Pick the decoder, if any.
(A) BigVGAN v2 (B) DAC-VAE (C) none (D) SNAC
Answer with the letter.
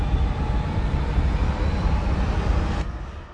A